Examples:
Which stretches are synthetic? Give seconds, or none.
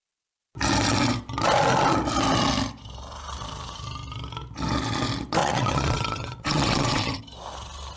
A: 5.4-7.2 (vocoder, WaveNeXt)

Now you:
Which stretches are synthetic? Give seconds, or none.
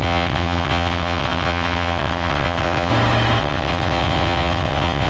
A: 0.0-2.9 (vocoder, WaveNeXt); 3.4-5.1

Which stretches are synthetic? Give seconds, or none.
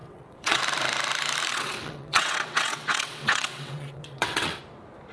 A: 0.0-0.6 (vocoder, WaveNeXt); 1.5-4.6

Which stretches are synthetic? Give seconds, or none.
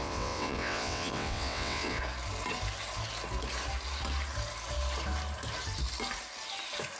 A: 0.0-2.0 (vocoder, WaveNeXt)